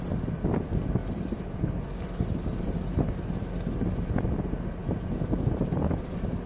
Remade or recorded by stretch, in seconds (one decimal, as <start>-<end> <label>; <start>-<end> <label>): 0.0-2.9 remade; 2.9-3.9 recorded; 3.9-6.5 remade